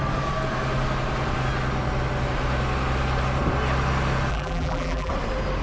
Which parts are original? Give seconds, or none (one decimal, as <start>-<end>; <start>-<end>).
0.0-4.3; 5.1-5.6